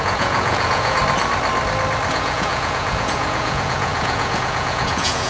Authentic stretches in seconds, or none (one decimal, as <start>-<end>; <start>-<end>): 1.0-2.1